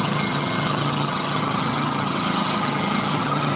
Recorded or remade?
remade